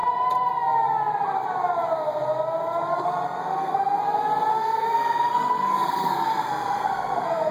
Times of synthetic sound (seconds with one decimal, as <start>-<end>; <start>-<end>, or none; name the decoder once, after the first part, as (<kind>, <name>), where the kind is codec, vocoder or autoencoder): 2.9-4.0 (codec, SNAC); 4.5-7.5